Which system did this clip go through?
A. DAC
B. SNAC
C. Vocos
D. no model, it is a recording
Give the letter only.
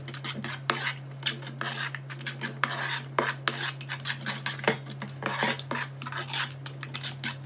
D